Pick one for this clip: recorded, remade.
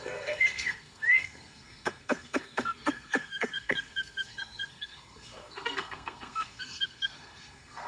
remade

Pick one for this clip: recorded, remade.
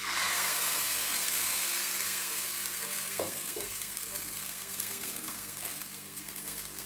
remade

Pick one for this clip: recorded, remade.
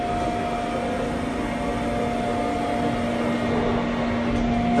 recorded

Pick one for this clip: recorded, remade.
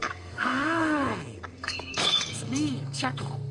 remade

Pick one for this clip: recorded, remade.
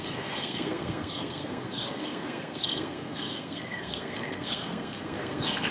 remade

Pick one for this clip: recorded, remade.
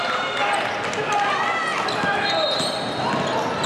recorded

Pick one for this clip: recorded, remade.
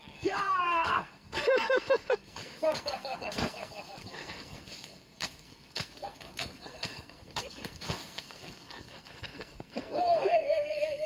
remade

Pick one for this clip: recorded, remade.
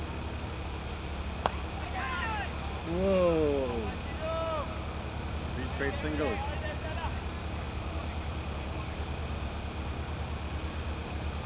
recorded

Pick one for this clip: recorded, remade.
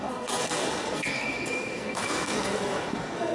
remade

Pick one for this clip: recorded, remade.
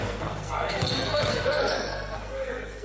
remade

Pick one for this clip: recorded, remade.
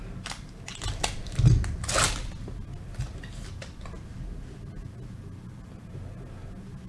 recorded